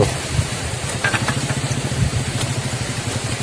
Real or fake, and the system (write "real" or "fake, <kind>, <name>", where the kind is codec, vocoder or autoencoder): fake, vocoder, BigVGAN v2